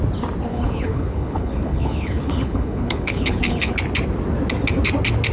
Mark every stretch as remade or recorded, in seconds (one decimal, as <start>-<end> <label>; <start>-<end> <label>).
0.0-0.5 recorded; 0.5-3.7 remade; 3.7-5.3 recorded